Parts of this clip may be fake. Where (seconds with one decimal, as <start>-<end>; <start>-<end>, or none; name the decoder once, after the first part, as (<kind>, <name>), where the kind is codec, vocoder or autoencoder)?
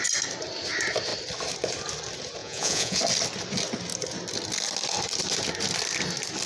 2.4-3.0 (vocoder, Vocos)